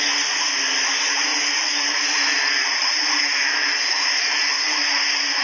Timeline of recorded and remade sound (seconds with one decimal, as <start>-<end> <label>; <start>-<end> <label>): 0.0-5.4 recorded

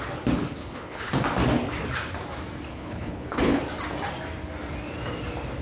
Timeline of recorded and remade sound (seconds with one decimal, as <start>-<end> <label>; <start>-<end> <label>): 0.0-0.6 recorded; 0.6-1.1 remade; 1.1-2.7 recorded; 2.7-3.6 remade; 3.6-5.6 recorded

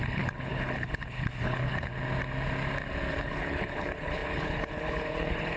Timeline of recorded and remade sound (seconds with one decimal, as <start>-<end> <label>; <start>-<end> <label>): 0.0-1.9 remade; 1.9-3.1 recorded; 3.1-5.6 remade

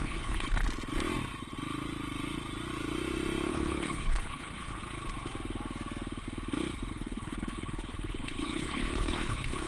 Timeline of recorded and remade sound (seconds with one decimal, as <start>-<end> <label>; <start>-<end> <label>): 0.0-0.6 remade; 0.6-3.5 recorded; 3.5-4.8 remade; 4.8-6.9 recorded; 6.9-9.7 remade

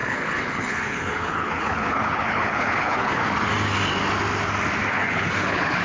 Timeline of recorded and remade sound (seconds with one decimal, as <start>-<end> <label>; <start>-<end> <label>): 0.0-3.2 remade; 3.2-4.9 recorded; 4.9-5.8 remade

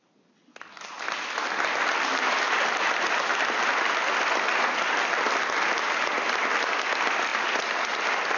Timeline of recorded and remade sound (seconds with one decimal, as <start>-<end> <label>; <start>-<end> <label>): 0.0-8.4 recorded

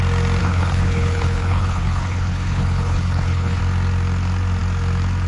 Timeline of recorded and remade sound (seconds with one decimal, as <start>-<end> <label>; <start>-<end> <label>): 0.0-0.4 recorded; 0.4-3.6 remade; 3.6-5.3 recorded